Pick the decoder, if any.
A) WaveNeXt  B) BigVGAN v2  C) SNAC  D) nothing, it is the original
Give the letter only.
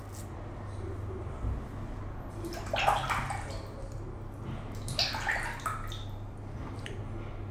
D